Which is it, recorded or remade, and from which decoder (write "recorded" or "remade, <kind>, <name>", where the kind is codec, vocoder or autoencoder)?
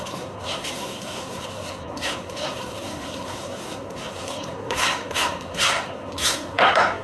remade, codec, SNAC